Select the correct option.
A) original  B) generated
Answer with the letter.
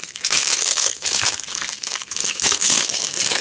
B